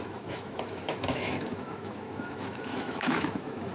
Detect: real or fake fake